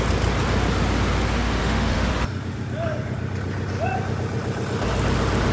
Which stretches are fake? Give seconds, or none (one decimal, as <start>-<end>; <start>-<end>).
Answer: 1.6-2.1